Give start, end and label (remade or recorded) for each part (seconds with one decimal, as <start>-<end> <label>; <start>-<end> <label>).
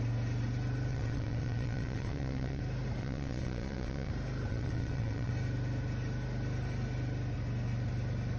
0.0-0.9 recorded; 0.9-2.6 remade; 2.6-3.0 recorded; 3.0-4.1 remade; 4.1-4.5 recorded; 4.5-5.3 remade; 5.3-8.4 recorded